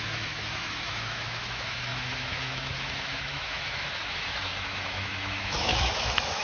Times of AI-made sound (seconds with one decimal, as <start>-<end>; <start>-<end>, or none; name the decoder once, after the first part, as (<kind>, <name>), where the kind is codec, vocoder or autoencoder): 0.0-6.4 (autoencoder, DAC-VAE)